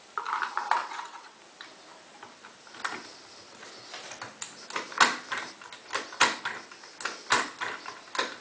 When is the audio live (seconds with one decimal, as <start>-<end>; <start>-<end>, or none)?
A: 0.0-0.8; 1.4-8.4